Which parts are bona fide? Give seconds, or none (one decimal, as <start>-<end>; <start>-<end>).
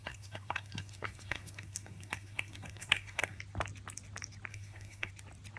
3.4-4.5; 5.1-5.6